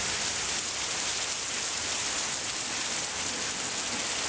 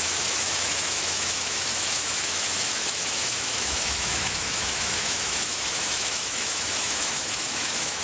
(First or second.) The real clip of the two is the first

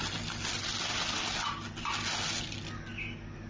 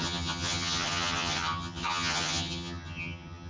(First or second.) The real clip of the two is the first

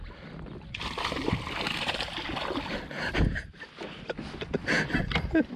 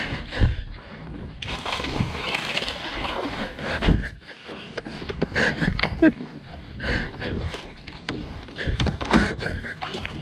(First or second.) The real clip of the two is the first